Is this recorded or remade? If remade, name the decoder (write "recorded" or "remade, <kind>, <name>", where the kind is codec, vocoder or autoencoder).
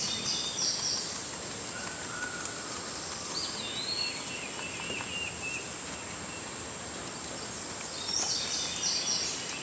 recorded